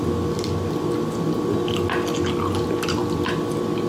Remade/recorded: recorded